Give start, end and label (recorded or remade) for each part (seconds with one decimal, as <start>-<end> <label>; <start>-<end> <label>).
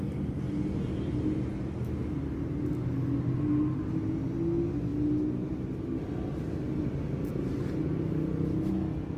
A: 0.0-9.2 recorded